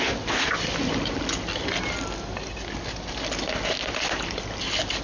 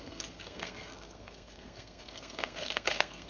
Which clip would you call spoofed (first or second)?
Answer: second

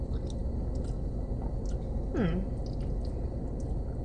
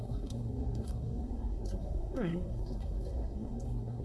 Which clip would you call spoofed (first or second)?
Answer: second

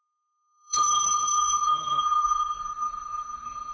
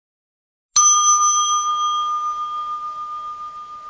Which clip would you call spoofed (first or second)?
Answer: first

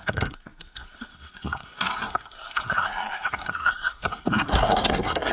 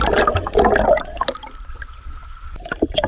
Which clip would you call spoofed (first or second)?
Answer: first